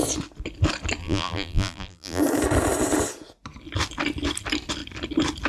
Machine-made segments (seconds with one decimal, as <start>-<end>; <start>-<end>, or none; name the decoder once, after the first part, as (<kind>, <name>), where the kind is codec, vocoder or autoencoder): 1.0-2.2 (vocoder, BigVGAN v2)